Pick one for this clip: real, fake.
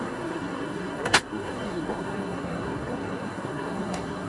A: fake